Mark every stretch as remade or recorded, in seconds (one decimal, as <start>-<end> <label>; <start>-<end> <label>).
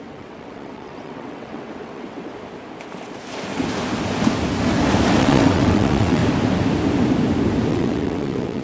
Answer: 0.0-2.3 remade; 2.3-5.2 recorded; 5.2-6.2 remade; 6.2-7.7 recorded; 7.7-8.6 remade